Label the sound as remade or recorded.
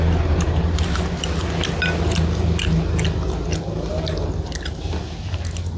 recorded